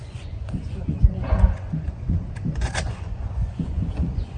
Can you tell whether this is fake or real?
fake